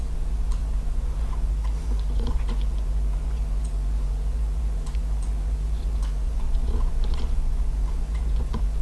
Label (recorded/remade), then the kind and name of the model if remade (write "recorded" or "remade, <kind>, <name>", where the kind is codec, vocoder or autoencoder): remade, vocoder, Vocos